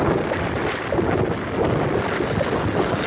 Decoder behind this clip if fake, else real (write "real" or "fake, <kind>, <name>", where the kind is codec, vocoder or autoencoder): real